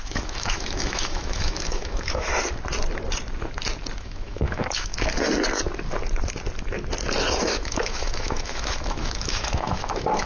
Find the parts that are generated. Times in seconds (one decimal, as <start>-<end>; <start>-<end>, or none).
0.0-2.3; 4.0-4.9; 7.4-10.3